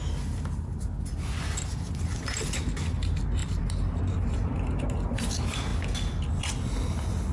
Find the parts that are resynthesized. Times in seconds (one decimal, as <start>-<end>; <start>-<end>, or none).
none